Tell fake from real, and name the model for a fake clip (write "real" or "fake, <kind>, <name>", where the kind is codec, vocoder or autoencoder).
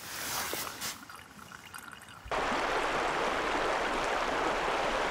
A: real